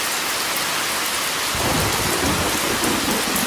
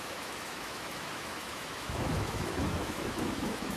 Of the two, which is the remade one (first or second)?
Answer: second